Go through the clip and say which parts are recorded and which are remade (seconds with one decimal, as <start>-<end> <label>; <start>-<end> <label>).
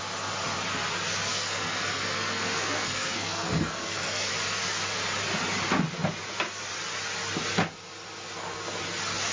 0.0-1.3 recorded; 1.3-4.3 remade; 4.3-9.3 recorded